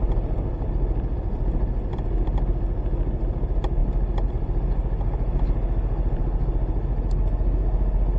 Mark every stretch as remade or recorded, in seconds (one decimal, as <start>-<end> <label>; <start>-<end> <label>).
0.0-8.2 recorded